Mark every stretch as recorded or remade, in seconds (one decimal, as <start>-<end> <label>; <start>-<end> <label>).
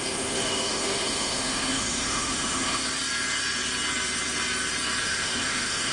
0.0-2.8 remade; 2.8-5.0 recorded; 5.0-5.9 remade